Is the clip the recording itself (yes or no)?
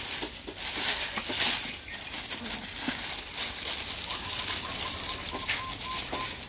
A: yes